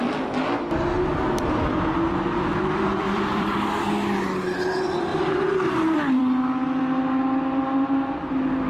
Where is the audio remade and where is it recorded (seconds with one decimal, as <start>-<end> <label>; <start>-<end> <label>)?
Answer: 0.0-2.5 recorded; 2.5-3.6 remade; 3.6-5.1 recorded; 5.1-6.2 remade; 6.2-8.7 recorded